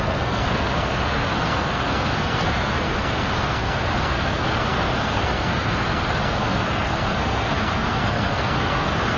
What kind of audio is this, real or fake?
fake